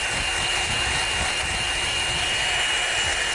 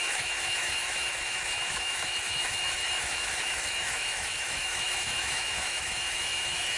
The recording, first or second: first